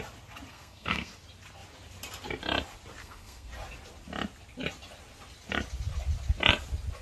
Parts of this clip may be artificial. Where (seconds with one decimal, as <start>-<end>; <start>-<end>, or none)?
0.5-1.1; 3.0-3.5